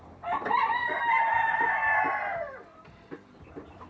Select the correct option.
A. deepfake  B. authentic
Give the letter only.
A